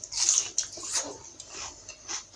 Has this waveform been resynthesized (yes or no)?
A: no